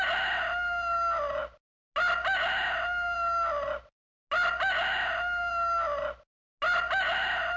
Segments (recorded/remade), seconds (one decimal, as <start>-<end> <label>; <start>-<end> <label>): 0.0-7.6 recorded